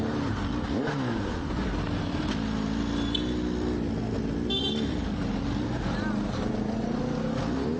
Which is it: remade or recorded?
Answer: recorded